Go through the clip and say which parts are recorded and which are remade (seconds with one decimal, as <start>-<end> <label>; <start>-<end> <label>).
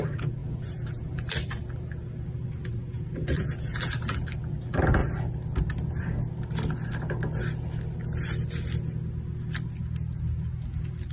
0.0-5.0 remade; 5.0-10.2 recorded; 10.2-11.1 remade